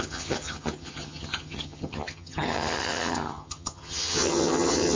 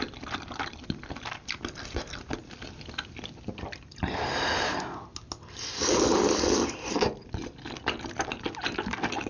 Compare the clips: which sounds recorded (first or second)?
second